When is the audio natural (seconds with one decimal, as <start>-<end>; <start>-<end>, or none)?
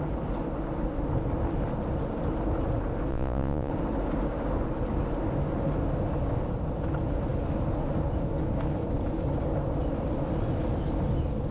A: 0.0-3.1; 3.7-11.5